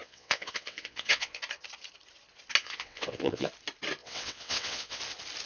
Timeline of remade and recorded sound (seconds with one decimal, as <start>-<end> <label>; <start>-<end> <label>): 0.0-1.4 remade; 1.4-2.6 recorded; 2.6-3.5 remade; 3.5-4.0 recorded; 4.0-5.0 remade; 5.0-5.5 recorded